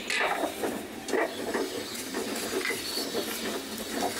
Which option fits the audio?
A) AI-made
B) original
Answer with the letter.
B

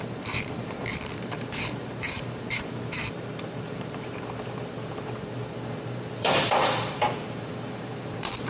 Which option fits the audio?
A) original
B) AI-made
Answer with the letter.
B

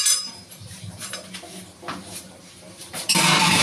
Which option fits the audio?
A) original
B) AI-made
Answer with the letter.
B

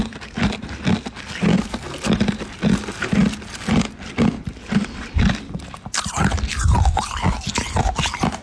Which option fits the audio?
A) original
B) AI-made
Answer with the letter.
A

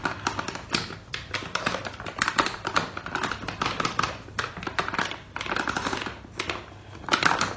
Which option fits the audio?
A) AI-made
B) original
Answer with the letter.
B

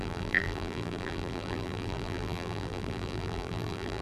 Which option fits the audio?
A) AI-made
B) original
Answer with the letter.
A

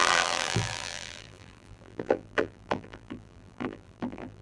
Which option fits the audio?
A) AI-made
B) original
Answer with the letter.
A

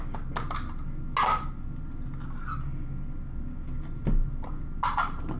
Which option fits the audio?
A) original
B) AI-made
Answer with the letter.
A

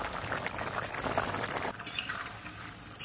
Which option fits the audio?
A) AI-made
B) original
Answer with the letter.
A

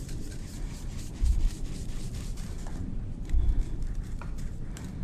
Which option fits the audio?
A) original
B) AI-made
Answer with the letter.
B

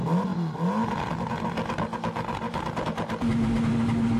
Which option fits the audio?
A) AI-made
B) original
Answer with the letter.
B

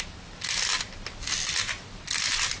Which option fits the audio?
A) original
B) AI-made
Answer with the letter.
A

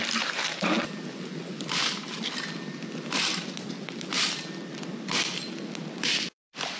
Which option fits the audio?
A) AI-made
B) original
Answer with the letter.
A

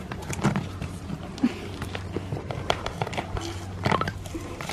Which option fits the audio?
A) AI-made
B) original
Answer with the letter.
A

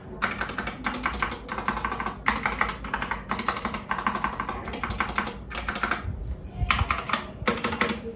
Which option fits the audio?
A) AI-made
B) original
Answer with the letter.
B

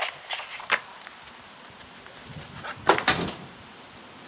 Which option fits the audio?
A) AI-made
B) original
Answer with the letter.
B